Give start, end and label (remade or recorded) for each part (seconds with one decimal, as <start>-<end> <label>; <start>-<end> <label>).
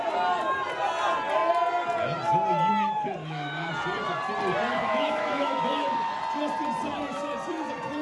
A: 0.0-3.2 recorded; 3.2-3.7 remade; 3.7-4.7 recorded; 4.7-6.2 remade; 6.2-8.0 recorded